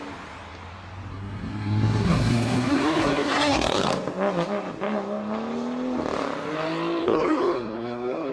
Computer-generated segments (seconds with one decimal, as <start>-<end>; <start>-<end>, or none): 1.1-3.9; 7.0-8.3